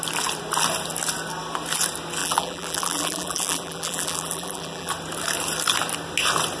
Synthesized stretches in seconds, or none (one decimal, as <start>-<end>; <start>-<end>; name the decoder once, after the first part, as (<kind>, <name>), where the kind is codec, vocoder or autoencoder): 2.2-4.9 (vocoder, BigVGAN v2)